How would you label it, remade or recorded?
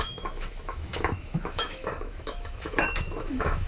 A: remade